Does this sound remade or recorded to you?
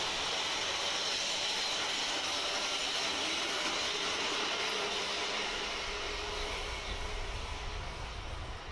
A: recorded